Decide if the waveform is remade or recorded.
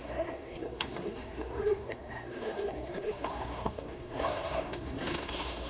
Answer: remade